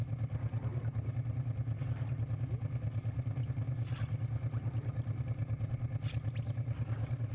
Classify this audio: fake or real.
real